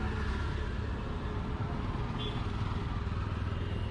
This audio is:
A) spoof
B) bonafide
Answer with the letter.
B